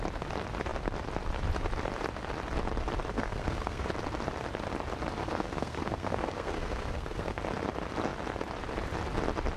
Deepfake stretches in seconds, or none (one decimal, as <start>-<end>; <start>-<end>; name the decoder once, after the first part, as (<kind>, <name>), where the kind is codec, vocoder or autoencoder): 3.1-3.9 (codec, SNAC); 5.2-7.4